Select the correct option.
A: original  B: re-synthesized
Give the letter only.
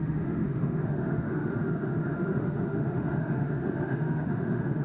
B